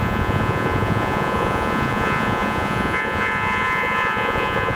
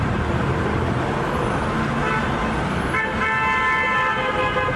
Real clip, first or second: second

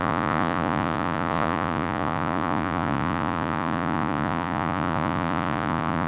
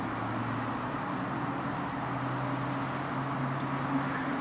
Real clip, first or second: second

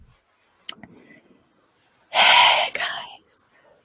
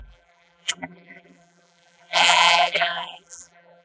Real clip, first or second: first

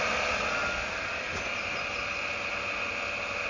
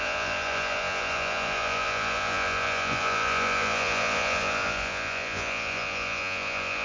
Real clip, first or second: first